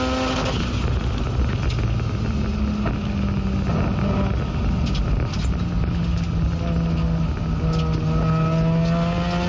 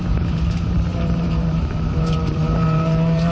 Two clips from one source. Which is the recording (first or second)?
first